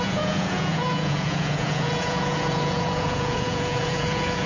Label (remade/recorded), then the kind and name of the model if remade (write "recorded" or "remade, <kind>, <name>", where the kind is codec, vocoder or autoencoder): remade, vocoder, Vocos